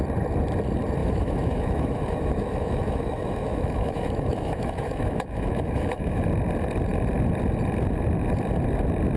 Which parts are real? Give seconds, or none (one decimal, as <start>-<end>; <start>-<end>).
0.0-1.0; 6.2-9.2